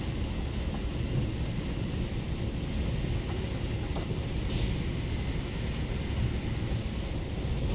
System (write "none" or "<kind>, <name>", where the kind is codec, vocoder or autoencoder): none